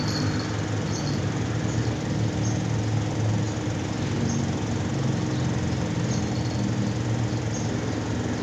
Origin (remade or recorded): recorded